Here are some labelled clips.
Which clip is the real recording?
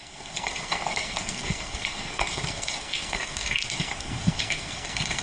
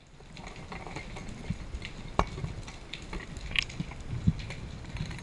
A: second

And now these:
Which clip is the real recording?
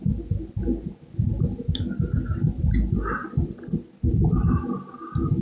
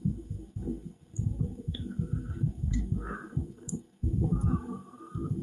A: first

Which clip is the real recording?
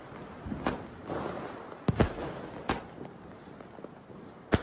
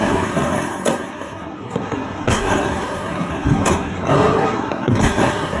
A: first